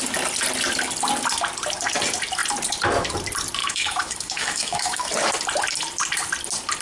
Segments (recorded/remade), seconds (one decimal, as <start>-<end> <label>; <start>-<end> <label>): 0.0-3.6 recorded; 3.6-5.1 remade; 5.1-6.8 recorded